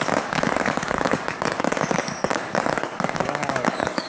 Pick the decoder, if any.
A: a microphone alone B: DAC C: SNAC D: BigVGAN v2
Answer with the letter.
B